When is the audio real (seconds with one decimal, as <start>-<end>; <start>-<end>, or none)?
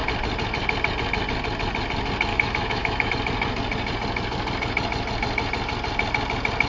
0.0-2.3; 3.1-6.7